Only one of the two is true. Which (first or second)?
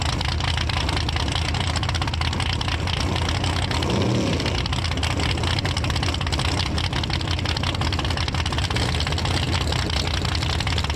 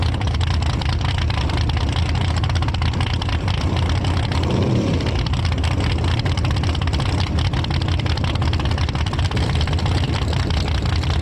first